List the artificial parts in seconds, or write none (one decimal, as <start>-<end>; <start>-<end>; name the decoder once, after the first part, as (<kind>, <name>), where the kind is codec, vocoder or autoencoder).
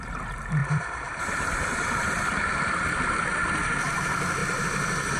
0.6-1.2 (vocoder, BigVGAN v2); 1.7-2.5